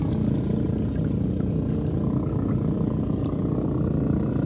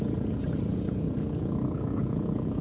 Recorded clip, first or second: first